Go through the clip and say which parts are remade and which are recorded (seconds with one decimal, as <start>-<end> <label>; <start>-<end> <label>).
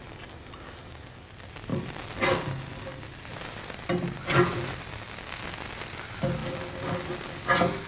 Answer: 0.0-7.9 recorded